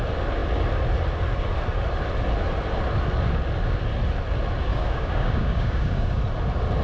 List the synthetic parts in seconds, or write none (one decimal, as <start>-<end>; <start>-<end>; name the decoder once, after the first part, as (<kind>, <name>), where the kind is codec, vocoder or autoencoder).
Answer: 4.7-6.2 (codec, DAC)